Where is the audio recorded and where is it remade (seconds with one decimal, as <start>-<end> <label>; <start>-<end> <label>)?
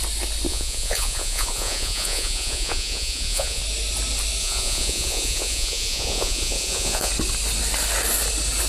0.0-0.5 recorded; 0.5-3.6 remade; 3.6-4.4 recorded; 4.4-7.1 remade; 7.1-8.7 recorded